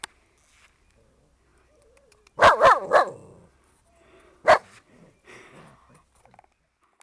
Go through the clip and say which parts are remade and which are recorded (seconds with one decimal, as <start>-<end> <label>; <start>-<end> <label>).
0.0-7.0 recorded